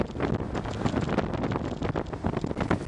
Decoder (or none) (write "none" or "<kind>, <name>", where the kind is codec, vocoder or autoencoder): none